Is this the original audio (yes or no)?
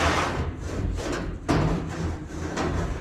no